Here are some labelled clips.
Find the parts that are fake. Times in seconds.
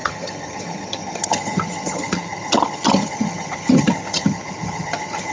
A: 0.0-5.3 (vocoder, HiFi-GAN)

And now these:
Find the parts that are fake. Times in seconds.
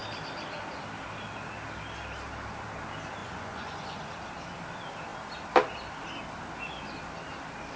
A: 3.2-4.0 (vocoder, Vocos)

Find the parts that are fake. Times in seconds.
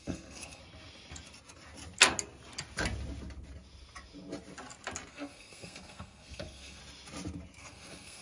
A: 0.0-0.6 (codec, SNAC); 5.1-6.8; 7.6-8.2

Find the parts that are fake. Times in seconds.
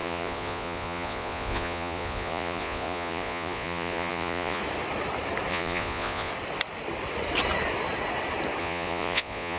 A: 0.0-4.6 (vocoder, Vocos); 5.5-6.3; 8.6-9.6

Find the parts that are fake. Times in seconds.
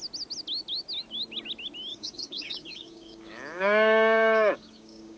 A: 1.9-5.2 (codec, DAC)